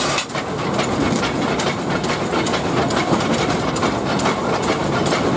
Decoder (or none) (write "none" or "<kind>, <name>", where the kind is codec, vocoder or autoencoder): none